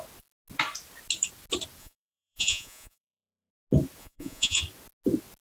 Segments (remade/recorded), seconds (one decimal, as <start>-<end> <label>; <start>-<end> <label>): 0.0-1.8 recorded; 1.8-3.5 remade; 3.5-4.0 recorded; 4.0-4.6 remade; 4.6-5.5 recorded